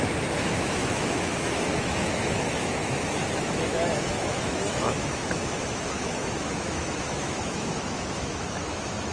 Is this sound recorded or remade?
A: remade